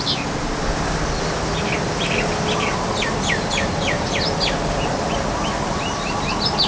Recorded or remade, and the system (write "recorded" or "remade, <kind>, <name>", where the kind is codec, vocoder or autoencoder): recorded